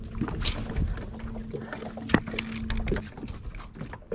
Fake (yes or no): no